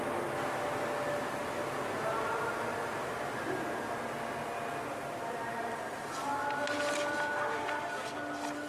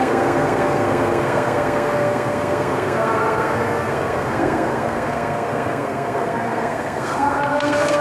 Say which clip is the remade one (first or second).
second